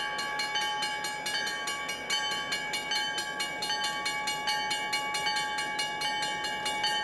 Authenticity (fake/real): real